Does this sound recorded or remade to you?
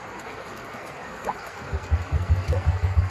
remade